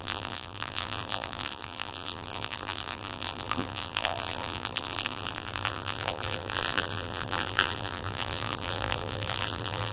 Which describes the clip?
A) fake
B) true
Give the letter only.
A